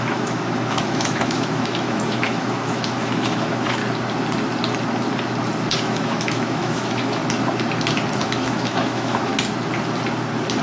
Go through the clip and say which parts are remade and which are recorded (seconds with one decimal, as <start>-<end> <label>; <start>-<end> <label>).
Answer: 0.0-3.8 remade; 3.8-5.8 recorded; 5.8-7.2 remade; 7.2-8.2 recorded; 8.2-9.3 remade; 9.3-10.6 recorded